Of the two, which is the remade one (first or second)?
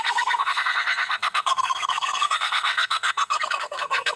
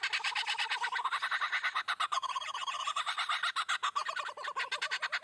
first